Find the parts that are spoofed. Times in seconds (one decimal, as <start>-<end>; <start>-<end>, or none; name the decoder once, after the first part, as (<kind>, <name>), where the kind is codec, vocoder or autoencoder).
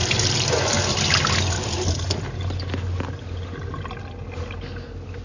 none